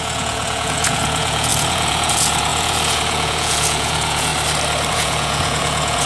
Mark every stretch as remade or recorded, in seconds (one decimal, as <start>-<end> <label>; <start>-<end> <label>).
0.0-4.3 remade; 4.3-4.9 recorded; 4.9-6.1 remade